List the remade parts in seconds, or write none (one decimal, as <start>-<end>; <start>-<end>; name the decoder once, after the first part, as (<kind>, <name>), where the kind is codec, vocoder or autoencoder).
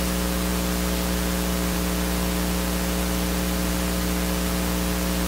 none